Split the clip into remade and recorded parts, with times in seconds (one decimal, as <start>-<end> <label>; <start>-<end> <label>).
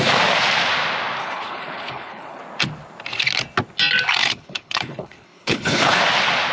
0.0-1.2 recorded; 1.2-2.4 remade; 2.4-4.2 recorded; 4.2-6.0 remade; 6.0-6.5 recorded